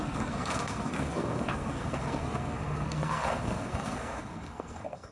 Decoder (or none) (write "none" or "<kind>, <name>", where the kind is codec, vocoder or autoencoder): codec, SNAC